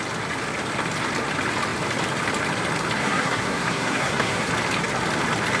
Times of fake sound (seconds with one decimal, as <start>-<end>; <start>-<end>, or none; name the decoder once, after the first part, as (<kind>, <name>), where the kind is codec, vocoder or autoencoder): 3.0-4.5 (codec, SNAC)